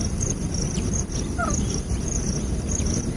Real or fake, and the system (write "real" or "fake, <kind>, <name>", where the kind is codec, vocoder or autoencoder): fake, vocoder, BigVGAN v2